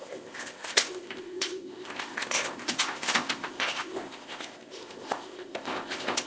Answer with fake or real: fake